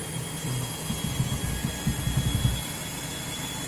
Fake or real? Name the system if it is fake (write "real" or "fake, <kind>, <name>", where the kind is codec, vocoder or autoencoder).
real